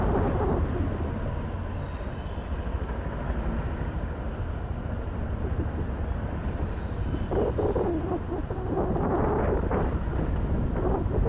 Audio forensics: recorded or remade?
recorded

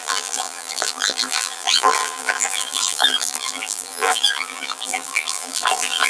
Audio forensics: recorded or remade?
remade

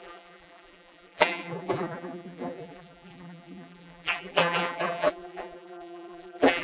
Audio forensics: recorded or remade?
remade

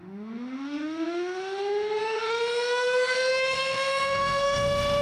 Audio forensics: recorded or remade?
remade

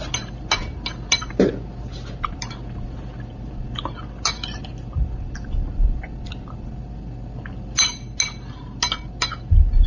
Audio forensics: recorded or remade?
recorded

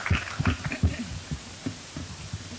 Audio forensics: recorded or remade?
recorded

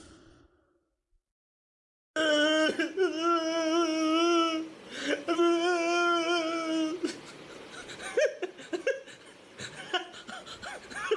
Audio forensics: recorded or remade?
recorded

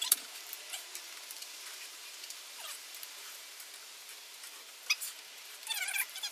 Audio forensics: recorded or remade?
remade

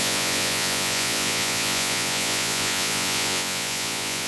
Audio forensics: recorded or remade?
remade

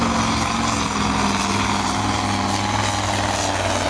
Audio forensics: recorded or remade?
recorded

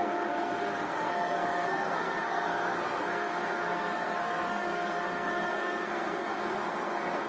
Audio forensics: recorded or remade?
remade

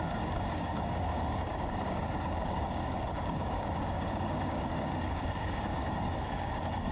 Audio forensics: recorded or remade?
remade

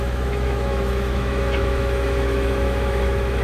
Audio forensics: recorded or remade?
remade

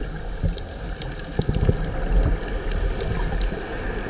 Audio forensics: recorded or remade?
recorded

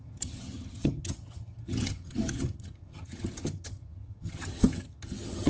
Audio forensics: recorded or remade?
remade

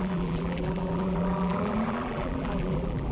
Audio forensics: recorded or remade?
remade